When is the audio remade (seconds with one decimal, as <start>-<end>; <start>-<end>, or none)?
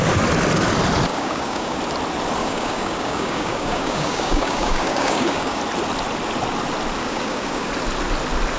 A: 1.1-1.8; 2.4-5.6; 7.0-7.7